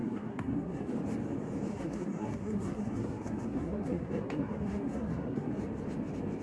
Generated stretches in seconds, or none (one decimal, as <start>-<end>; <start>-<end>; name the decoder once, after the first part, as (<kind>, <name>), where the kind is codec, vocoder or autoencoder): 0.0-0.9 (codec, SNAC); 1.7-5.5